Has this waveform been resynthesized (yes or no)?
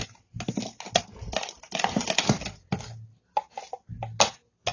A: no